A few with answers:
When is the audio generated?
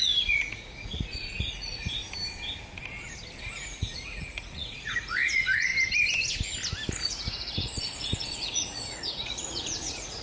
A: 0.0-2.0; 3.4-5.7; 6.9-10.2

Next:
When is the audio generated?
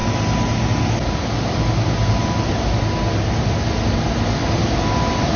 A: none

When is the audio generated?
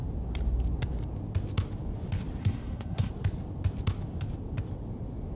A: 2.4-3.1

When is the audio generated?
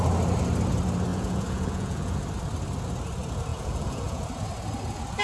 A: 1.1-2.2; 3.5-4.2